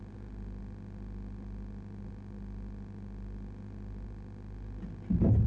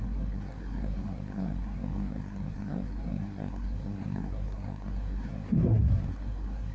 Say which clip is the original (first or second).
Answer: first